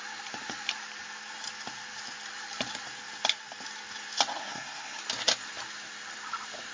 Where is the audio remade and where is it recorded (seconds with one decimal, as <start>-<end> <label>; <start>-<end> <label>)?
0.0-4.4 recorded; 4.4-5.0 remade; 5.0-6.7 recorded

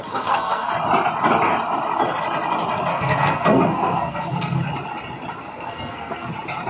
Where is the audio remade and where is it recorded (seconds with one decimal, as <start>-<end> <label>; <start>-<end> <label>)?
0.0-0.7 remade; 0.7-2.9 recorded; 2.9-4.6 remade; 4.6-5.4 recorded; 5.4-6.3 remade; 6.3-6.7 recorded

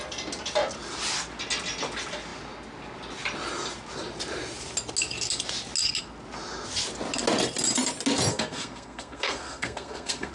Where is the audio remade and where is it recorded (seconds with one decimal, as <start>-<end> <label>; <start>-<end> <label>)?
0.0-8.3 recorded; 8.3-10.3 remade

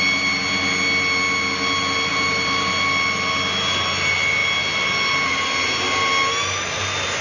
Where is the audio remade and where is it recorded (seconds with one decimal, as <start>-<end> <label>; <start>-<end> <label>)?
0.0-2.1 recorded; 2.1-2.7 remade; 2.7-7.2 recorded

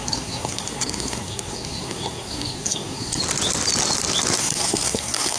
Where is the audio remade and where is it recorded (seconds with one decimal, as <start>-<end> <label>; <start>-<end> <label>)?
0.0-3.2 remade; 3.2-4.4 recorded; 4.4-5.4 remade

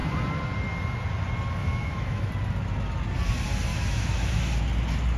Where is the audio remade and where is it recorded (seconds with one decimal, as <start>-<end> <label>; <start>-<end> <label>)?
0.0-1.6 recorded; 1.6-2.3 remade; 2.3-3.7 recorded; 3.7-4.4 remade; 4.4-5.2 recorded

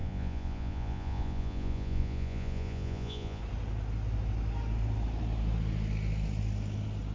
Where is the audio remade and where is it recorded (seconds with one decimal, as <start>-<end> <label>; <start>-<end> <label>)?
0.0-3.4 remade; 3.4-7.1 recorded